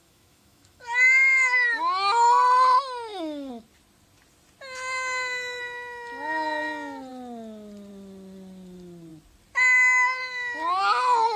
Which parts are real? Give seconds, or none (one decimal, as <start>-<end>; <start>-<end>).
3.5-11.4